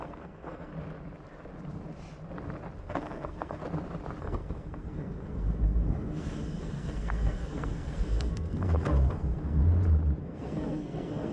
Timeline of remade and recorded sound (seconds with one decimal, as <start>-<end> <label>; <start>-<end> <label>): 0.0-0.7 remade; 0.7-2.8 recorded; 2.8-3.6 remade; 3.6-4.2 recorded; 4.2-9.6 remade; 9.6-10.2 recorded; 10.2-11.3 remade